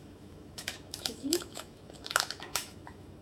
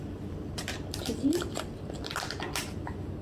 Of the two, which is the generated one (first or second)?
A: first